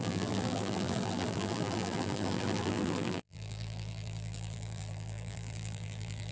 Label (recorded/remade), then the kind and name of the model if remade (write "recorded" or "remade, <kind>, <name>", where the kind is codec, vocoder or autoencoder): remade, vocoder, BigVGAN v2